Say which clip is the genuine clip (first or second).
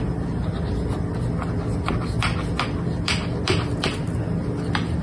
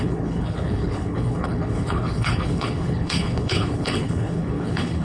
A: first